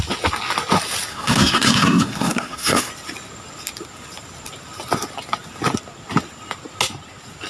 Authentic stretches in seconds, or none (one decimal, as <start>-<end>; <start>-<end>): 0.0-1.1; 2.9-7.5